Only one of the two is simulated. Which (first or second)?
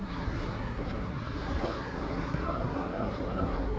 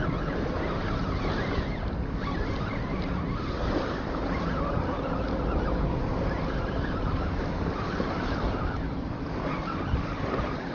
first